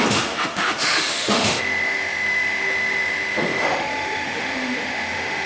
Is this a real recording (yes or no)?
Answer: no